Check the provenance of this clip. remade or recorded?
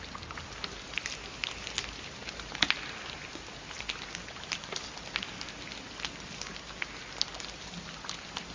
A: recorded